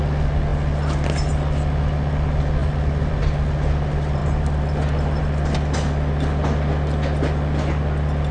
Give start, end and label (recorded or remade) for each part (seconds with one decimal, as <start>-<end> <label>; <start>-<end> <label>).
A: 0.0-8.3 recorded